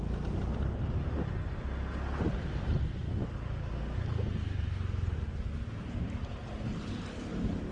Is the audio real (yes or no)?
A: yes